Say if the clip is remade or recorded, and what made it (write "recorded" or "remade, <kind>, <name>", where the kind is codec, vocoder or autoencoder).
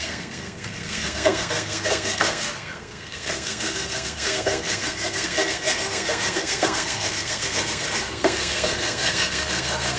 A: remade, codec, SNAC